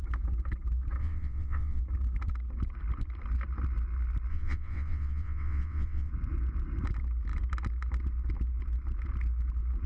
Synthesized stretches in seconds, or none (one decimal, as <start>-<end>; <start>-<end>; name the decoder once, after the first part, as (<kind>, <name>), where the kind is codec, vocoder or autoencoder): 1.0-1.8 (vocoder, WaveNeXt); 4.3-6.1